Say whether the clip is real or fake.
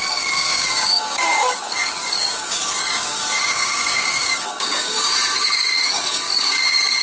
fake